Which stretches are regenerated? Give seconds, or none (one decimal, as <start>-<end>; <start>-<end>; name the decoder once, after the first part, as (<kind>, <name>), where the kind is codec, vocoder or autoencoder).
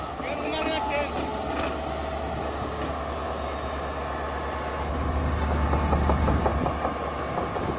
none